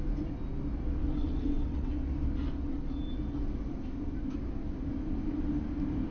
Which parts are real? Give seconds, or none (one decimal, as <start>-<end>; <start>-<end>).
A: 0.0-1.0; 1.9-6.1